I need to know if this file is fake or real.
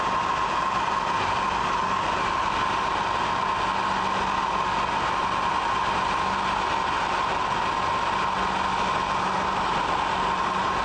real